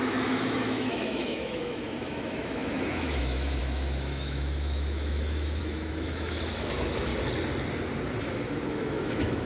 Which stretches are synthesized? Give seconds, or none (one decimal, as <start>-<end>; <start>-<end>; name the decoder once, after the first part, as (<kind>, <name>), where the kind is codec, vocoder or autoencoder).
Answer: 0.0-7.1 (autoencoder, DAC-VAE); 8.2-9.5